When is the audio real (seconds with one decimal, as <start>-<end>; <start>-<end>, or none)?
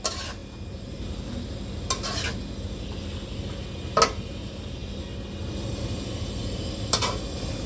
0.0-7.7